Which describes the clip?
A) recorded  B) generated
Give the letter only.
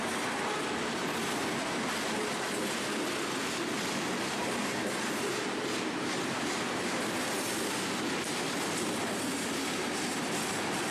A